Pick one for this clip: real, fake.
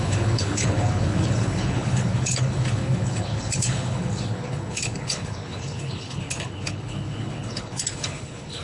fake